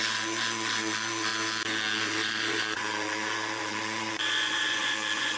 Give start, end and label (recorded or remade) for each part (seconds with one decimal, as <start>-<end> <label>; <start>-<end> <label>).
0.0-1.3 remade; 1.3-2.0 recorded; 2.0-5.4 remade